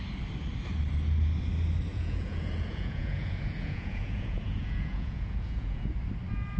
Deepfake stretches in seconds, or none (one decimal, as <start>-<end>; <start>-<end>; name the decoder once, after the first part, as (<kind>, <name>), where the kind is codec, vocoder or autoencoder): 1.9-5.9 (vocoder, Vocos)